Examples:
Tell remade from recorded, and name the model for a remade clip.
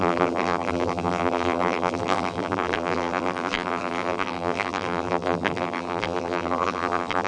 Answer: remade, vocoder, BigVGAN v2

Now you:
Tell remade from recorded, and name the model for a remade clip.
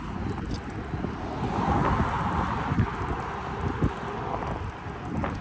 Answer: recorded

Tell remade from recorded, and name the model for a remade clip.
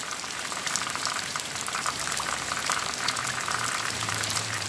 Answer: remade, vocoder, BigVGAN v2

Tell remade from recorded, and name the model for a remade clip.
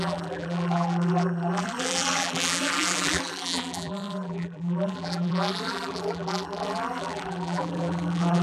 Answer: remade, vocoder, BigVGAN v2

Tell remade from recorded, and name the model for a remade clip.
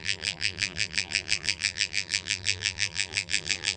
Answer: remade, vocoder, BigVGAN v2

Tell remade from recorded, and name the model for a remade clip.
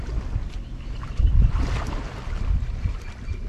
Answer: recorded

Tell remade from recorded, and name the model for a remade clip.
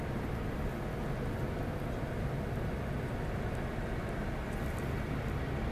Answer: recorded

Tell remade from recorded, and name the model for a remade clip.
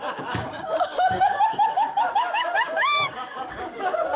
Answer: remade, codec, DAC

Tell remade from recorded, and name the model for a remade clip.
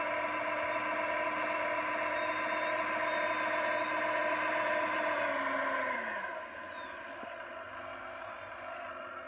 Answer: recorded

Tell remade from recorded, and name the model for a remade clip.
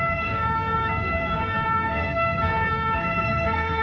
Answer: remade, codec, SNAC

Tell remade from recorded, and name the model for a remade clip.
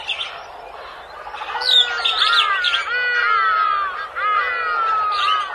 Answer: recorded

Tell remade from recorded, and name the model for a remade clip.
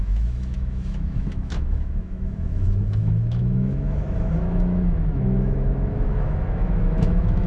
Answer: remade, autoencoder, DAC-VAE